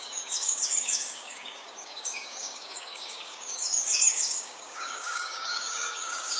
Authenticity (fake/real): fake